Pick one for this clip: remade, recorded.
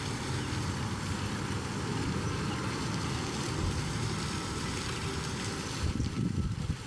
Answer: remade